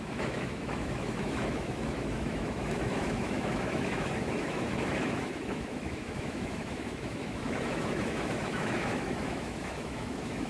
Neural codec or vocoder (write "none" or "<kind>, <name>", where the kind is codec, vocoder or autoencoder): autoencoder, DAC-VAE